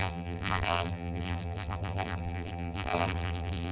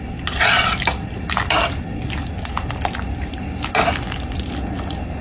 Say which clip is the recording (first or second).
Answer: second